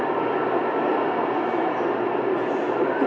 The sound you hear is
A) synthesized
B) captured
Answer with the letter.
B